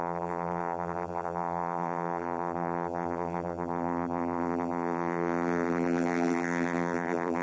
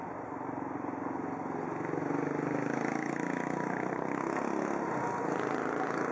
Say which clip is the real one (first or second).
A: second